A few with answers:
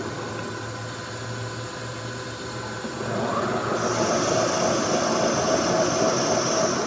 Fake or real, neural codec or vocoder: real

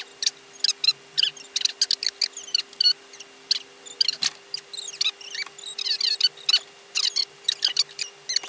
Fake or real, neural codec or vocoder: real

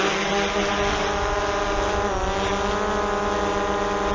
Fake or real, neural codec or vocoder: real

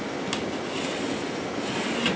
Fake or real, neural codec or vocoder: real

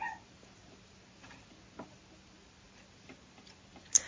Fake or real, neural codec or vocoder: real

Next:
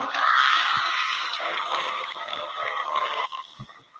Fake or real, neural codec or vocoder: fake, codec, DAC